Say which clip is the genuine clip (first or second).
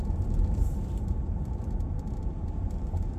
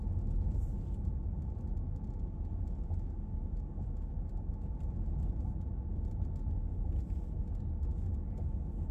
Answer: second